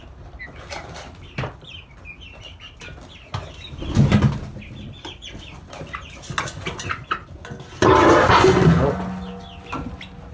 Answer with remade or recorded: recorded